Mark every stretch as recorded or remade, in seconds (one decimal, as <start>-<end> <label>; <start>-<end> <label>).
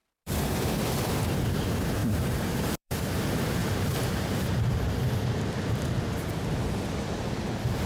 0.0-0.7 remade; 0.7-2.0 recorded; 2.0-3.2 remade; 3.2-3.6 recorded; 3.6-4.7 remade; 4.7-7.9 recorded